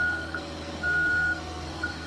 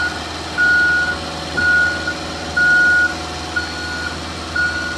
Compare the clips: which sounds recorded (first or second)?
second